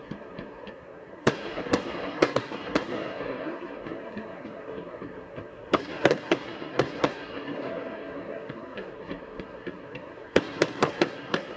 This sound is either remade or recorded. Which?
remade